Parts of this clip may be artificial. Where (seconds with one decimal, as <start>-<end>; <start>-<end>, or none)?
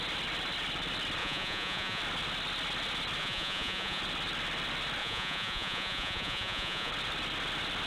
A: 1.2-2.0; 3.2-4.0; 5.0-6.9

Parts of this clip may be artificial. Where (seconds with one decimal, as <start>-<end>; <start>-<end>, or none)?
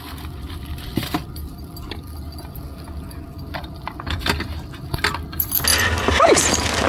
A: none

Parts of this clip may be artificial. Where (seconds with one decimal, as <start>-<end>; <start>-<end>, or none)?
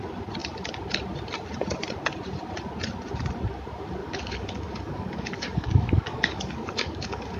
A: 4.0-7.4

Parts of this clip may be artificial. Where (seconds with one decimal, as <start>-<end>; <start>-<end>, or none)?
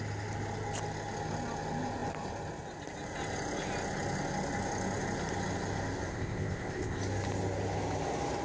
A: 6.1-7.0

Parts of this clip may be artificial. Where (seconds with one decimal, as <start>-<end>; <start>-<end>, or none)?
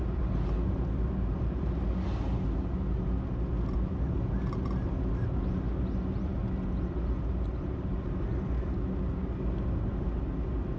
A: none